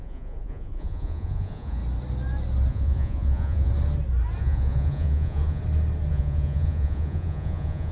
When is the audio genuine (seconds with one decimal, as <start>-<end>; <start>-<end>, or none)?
1.8-2.7; 3.7-4.4; 5.6-6.1